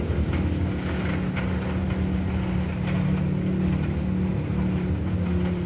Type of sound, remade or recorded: recorded